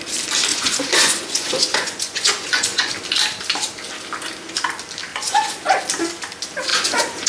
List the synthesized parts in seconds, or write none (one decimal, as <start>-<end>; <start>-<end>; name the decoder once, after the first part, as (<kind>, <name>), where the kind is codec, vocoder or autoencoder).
0.5-2.9 (vocoder, Vocos); 5.1-5.8; 6.7-7.3